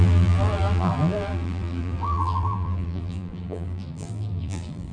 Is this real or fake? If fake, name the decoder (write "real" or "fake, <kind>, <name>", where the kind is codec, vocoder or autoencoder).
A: fake, vocoder, BigVGAN v2